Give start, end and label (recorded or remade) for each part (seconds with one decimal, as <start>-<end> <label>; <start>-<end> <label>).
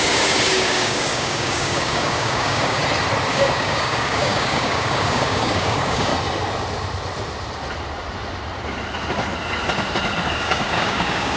0.0-2.8 remade; 2.8-3.3 recorded; 3.3-6.1 remade; 6.1-10.3 recorded; 10.3-11.4 remade